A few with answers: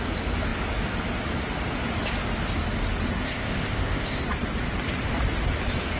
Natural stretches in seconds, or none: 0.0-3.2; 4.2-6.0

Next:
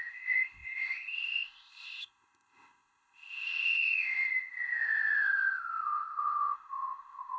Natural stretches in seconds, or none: none